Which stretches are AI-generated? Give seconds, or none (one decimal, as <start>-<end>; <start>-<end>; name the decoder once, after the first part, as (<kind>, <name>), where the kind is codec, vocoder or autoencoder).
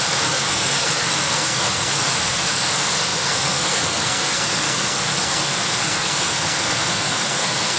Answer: 0.0-7.8 (codec, SNAC)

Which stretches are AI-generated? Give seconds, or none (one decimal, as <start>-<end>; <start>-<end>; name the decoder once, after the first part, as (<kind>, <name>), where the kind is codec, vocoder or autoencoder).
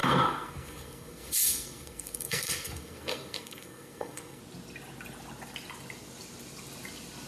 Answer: 0.0-4.4 (codec, SNAC)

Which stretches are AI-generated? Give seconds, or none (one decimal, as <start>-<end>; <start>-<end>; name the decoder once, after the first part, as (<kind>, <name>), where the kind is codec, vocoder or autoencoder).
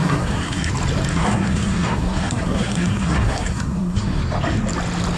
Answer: 0.0-0.7 (codec, SNAC); 1.1-4.2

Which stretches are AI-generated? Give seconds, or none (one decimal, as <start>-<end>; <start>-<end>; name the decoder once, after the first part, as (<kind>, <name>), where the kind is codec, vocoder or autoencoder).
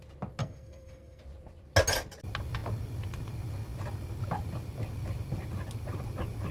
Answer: 0.4-1.2 (codec, SNAC)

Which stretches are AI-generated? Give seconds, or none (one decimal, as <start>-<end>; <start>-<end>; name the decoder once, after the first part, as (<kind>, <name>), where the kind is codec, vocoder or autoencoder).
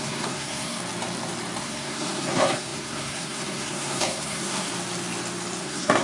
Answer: 0.0-0.8 (codec, SNAC); 1.6-4.7; 5.6-6.0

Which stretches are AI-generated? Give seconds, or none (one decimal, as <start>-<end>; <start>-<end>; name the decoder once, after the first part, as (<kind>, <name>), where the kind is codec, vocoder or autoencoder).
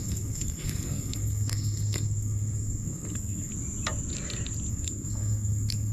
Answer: 0.0-3.5 (codec, SNAC); 4.7-5.9